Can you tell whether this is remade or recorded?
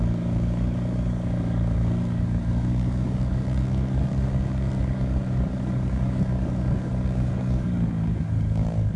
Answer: remade